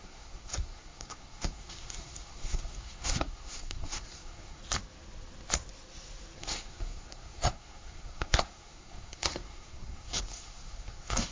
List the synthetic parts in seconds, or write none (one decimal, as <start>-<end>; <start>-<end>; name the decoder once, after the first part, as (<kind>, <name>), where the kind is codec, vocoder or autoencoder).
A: 0.0-4.6 (codec, SNAC); 6.4-11.3